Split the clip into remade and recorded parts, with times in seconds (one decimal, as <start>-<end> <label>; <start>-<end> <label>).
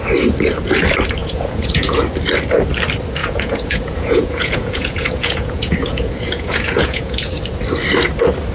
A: 0.0-1.2 recorded; 1.2-2.0 remade; 2.0-3.2 recorded; 3.2-7.4 remade; 7.4-8.5 recorded